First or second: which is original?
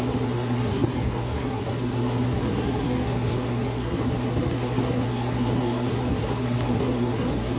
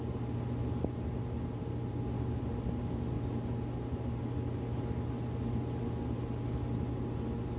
second